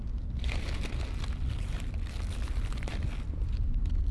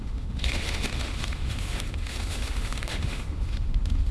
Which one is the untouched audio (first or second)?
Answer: first